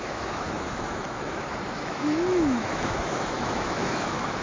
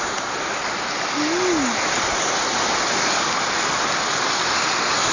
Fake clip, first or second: first